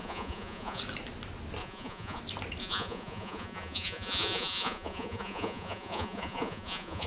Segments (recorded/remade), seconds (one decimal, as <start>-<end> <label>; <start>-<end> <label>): 0.0-0.8 remade; 0.8-1.6 recorded; 1.6-2.2 remade; 2.2-2.6 recorded; 2.6-7.1 remade